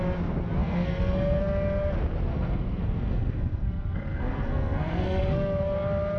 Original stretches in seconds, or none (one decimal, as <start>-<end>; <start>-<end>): 0.0-0.6; 1.4-2.3; 5.6-6.2